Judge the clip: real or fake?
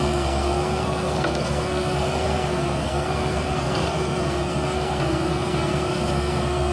fake